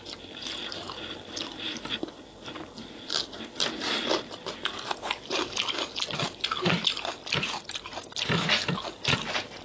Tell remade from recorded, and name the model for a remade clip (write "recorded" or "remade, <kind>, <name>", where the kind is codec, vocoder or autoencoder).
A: recorded